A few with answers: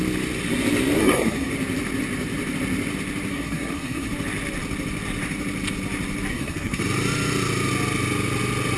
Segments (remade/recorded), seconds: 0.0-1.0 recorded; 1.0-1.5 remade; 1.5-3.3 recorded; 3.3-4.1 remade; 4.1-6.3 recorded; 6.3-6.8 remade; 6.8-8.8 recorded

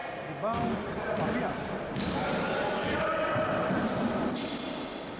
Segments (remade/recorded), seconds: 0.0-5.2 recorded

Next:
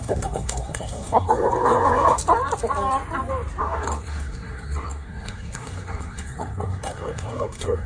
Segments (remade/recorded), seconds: 0.0-2.2 remade; 2.2-3.6 recorded; 3.6-7.9 remade

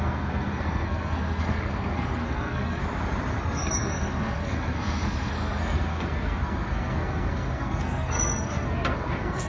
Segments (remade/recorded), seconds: 0.0-2.8 remade; 2.8-3.4 recorded; 3.4-9.5 remade

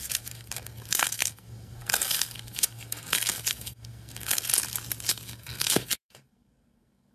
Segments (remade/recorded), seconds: 0.0-4.5 remade; 4.5-5.1 recorded; 5.1-7.1 remade